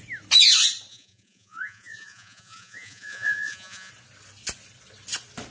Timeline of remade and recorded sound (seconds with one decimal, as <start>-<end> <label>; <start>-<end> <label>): 0.0-0.9 recorded; 0.9-3.9 remade; 3.9-5.5 recorded